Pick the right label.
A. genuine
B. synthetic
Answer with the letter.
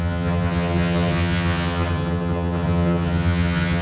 B